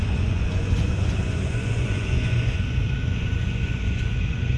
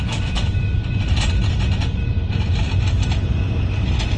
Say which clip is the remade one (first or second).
first